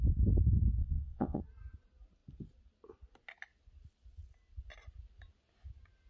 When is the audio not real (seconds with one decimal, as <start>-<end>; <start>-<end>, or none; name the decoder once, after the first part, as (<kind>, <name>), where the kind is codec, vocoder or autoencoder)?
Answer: 0.8-1.4 (vocoder, Vocos)